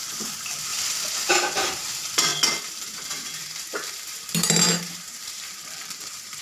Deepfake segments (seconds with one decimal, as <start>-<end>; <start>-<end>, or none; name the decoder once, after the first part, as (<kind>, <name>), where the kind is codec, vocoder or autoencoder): 0.0-0.7 (vocoder, BigVGAN v2); 1.3-2.3; 3.2-6.4